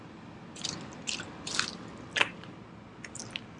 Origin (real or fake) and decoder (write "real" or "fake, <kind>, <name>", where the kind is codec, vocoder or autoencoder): real